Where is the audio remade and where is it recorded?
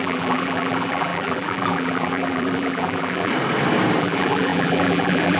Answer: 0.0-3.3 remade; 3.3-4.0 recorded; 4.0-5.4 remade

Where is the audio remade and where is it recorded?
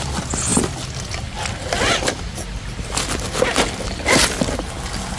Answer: 0.0-5.2 recorded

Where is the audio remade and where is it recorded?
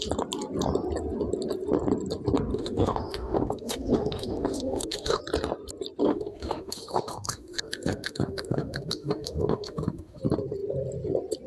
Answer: 0.0-2.5 recorded; 2.5-5.2 remade; 5.2-6.0 recorded; 6.0-10.2 remade; 10.2-11.5 recorded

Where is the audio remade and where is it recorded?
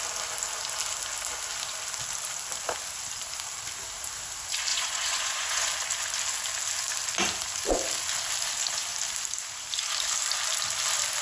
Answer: 0.0-4.7 recorded; 4.7-5.7 remade; 5.7-11.2 recorded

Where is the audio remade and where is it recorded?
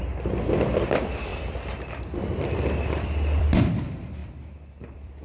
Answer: 0.0-5.2 remade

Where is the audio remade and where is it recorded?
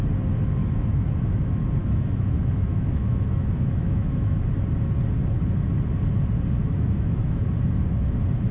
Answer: 0.0-0.6 recorded; 0.6-1.1 remade; 1.1-1.8 recorded; 1.8-4.4 remade; 4.4-6.6 recorded; 6.6-7.4 remade; 7.4-8.5 recorded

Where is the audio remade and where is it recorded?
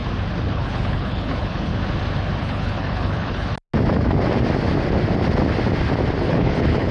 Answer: 0.0-0.5 recorded; 0.5-1.7 remade; 1.7-2.4 recorded; 2.4-3.5 remade; 3.5-6.2 recorded; 6.2-6.9 remade